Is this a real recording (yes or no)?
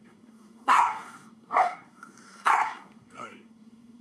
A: no